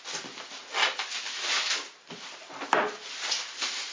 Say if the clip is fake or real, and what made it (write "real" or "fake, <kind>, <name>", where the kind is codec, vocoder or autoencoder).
real